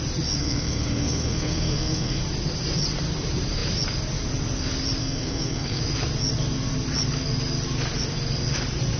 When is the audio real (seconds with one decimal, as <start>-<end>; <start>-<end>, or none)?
0.0-0.4; 2.2-5.0; 5.8-9.0